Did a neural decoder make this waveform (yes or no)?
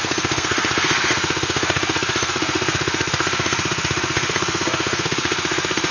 yes